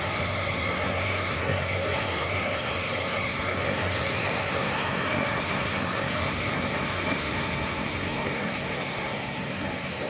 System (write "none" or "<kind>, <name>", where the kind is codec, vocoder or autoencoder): codec, SNAC